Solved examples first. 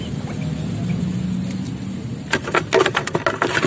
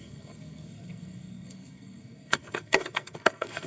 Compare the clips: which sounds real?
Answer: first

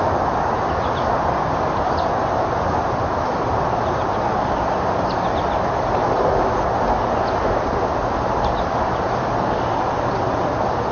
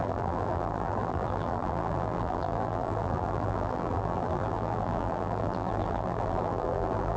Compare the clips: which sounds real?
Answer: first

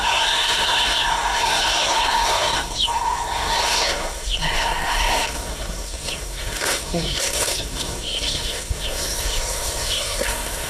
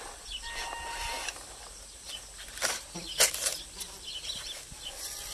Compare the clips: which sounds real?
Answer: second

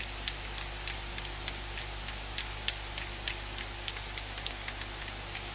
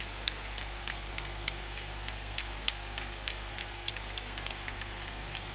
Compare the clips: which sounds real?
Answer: first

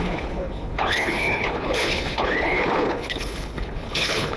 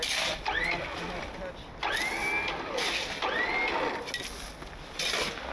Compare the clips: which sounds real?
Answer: second